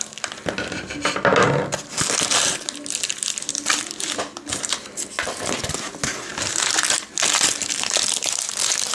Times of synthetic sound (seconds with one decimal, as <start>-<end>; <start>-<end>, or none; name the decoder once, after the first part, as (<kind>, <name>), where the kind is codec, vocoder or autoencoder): none